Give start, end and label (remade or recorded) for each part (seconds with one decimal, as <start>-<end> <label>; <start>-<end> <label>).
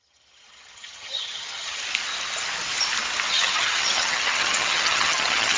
0.0-1.8 remade; 1.8-3.3 recorded; 3.3-5.6 remade